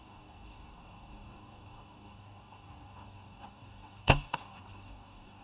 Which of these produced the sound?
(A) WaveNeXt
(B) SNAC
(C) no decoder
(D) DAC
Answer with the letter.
D